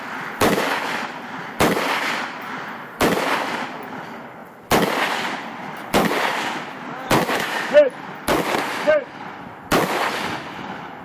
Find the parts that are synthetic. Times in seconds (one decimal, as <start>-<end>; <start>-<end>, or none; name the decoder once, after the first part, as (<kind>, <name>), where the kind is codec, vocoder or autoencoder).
none

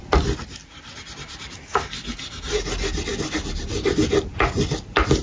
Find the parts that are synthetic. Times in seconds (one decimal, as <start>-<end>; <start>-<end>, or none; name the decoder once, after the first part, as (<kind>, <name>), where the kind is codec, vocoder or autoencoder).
none

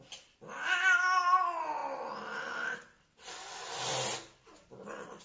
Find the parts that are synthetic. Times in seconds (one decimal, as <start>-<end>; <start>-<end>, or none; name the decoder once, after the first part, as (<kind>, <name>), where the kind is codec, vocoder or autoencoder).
none

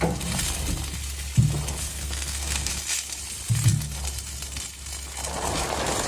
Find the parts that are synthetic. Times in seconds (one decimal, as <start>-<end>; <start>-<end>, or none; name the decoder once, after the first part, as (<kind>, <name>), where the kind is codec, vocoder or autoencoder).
1.9-2.7 (codec, SNAC)